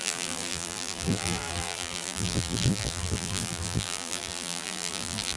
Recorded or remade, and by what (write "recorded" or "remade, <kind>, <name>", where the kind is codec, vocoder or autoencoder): remade, vocoder, BigVGAN v2